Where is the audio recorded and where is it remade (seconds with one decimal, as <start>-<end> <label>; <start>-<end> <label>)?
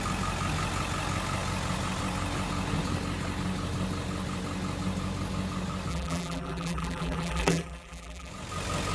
0.0-5.9 recorded; 5.9-8.3 remade; 8.3-8.9 recorded